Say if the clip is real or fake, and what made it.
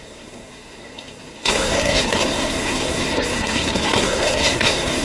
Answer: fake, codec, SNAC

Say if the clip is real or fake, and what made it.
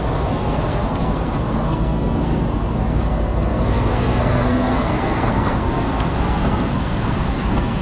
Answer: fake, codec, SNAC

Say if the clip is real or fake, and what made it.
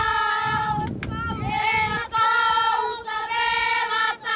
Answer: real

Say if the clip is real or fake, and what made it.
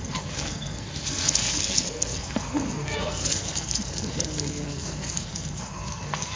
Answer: fake, codec, SNAC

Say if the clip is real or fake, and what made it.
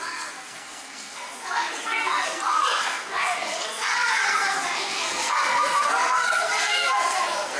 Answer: fake, codec, SNAC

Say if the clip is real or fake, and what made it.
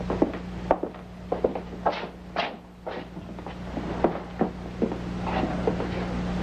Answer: real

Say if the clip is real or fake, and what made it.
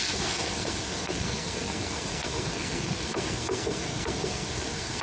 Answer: fake, codec, SNAC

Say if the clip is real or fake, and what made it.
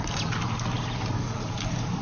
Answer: real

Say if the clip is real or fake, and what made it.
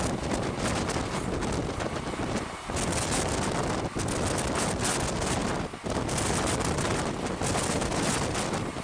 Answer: real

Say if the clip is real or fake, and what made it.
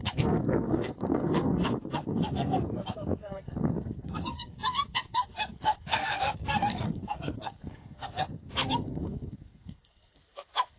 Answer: fake, codec, SNAC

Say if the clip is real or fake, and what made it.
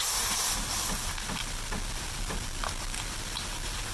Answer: real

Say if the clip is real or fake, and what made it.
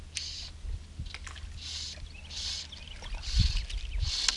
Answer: real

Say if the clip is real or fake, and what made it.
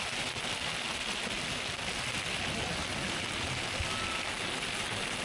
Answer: real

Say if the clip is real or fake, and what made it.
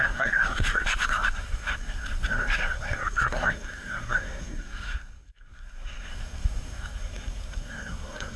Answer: fake, codec, SNAC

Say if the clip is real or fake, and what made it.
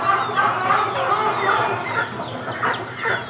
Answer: real